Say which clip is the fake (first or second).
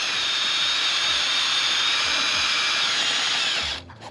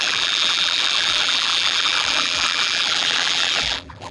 second